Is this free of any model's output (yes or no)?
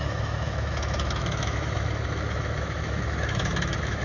no